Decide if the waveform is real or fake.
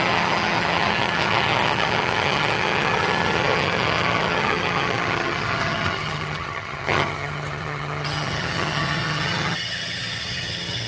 fake